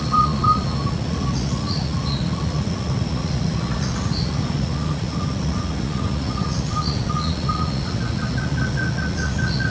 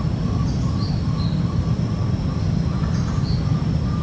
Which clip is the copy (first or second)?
first